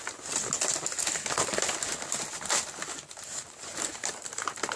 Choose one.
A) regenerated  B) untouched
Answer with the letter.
B